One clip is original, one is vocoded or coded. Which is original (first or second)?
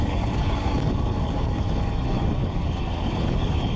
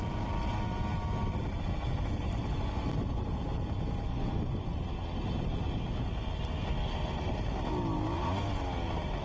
second